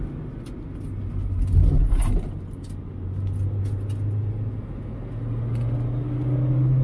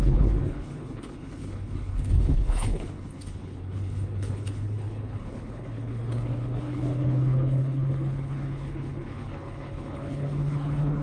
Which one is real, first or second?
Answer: first